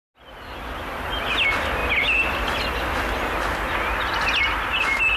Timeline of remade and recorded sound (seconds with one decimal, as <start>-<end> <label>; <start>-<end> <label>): 0.0-5.2 recorded